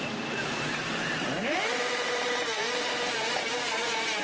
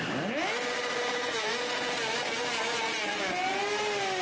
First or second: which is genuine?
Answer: second